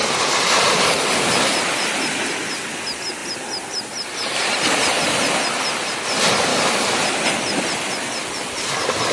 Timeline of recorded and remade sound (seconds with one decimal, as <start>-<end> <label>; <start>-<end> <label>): 0.0-1.1 remade; 1.1-3.2 recorded; 3.2-5.0 remade; 5.0-6.5 recorded; 6.5-8.2 remade; 8.2-9.1 recorded